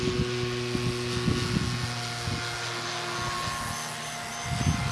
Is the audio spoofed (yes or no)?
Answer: no